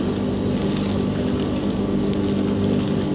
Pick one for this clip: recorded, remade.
recorded